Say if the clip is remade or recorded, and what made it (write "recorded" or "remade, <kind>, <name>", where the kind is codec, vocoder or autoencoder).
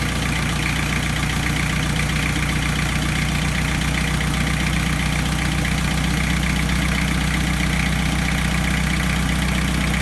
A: recorded